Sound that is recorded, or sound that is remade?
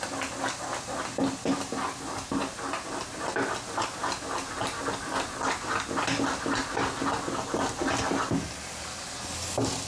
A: recorded